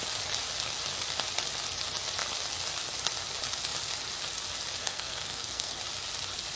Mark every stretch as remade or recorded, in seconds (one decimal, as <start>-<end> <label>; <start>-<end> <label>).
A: 0.0-4.8 recorded; 4.8-5.8 remade; 5.8-6.6 recorded